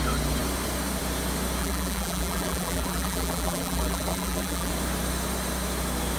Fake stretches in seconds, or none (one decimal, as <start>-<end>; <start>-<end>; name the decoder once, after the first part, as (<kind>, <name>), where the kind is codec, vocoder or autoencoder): 1.6-4.7 (vocoder, BigVGAN v2)

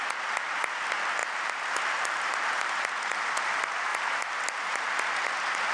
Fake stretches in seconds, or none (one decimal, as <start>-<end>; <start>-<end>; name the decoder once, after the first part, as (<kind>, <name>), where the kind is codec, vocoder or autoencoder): 1.2-2.8 (vocoder, BigVGAN v2); 3.9-4.9

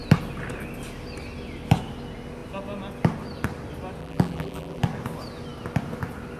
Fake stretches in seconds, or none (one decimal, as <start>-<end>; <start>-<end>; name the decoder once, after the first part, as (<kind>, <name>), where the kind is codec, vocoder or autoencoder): 4.0-4.8 (vocoder, BigVGAN v2)

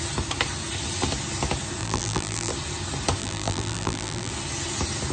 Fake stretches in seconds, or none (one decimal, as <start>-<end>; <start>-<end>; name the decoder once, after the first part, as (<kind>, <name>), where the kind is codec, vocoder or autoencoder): 1.8-2.5 (vocoder, BigVGAN v2); 3.2-4.3

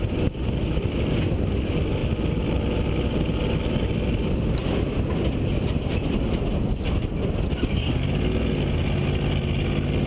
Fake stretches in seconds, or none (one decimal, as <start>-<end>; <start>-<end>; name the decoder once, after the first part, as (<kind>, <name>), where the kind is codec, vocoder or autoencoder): none

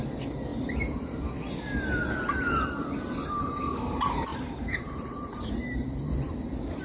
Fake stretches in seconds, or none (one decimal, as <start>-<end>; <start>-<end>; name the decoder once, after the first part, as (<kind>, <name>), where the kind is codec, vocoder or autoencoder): 4.3-6.1 (vocoder, BigVGAN v2)

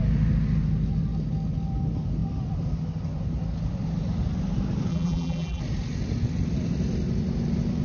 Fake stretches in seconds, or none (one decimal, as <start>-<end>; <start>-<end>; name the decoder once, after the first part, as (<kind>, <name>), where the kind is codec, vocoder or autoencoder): 4.9-5.6 (vocoder, BigVGAN v2)

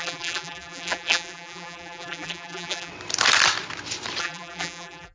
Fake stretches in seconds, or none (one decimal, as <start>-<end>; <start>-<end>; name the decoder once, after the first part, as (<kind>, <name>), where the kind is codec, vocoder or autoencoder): 0.0-2.9 (vocoder, BigVGAN v2); 4.2-5.1